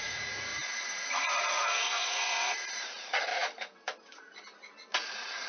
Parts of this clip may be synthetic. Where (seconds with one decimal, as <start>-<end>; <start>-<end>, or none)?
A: 0.0-3.3; 5.1-5.5